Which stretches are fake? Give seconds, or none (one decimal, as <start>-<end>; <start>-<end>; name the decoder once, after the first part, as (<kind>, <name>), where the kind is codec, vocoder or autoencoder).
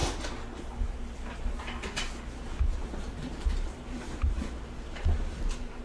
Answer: 2.6-5.8 (vocoder, BigVGAN v2)